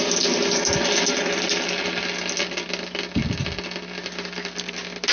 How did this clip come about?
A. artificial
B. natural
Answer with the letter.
B